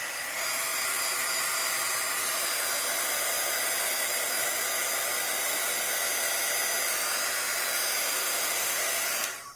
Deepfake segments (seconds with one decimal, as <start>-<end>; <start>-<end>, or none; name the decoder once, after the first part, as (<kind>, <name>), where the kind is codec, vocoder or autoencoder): 8.0-8.8 (autoencoder, DAC-VAE)